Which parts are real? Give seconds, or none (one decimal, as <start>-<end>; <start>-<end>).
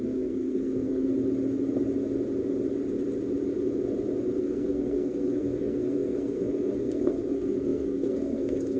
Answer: 1.1-4.4